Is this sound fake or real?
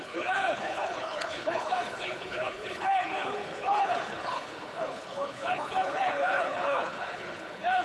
fake